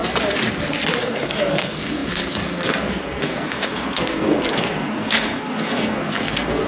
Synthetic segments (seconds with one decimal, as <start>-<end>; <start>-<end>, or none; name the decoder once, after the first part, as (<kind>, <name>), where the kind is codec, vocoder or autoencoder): 1.0-6.7 (codec, SNAC)